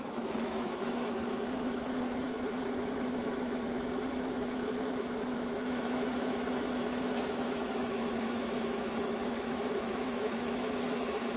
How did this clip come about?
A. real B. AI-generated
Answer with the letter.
B